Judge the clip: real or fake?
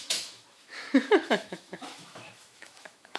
fake